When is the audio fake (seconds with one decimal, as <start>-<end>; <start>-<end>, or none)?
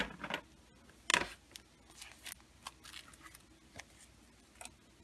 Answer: none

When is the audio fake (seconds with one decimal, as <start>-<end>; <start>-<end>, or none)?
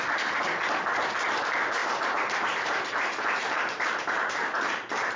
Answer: 1.8-5.2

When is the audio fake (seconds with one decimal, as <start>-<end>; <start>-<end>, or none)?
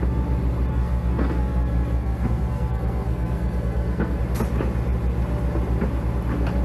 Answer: 0.7-4.2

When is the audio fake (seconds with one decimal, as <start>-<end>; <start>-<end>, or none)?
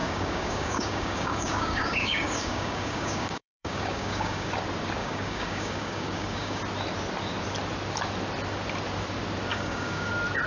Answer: 0.0-4.5; 5.0-6.6; 9.5-10.1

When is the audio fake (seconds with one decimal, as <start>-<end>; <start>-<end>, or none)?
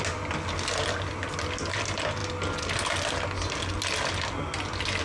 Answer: none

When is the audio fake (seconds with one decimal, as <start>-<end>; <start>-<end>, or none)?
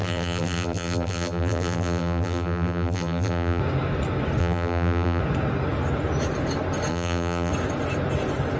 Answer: 0.0-3.6; 4.4-5.2; 6.9-7.5